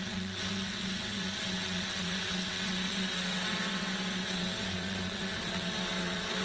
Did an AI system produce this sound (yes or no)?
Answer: yes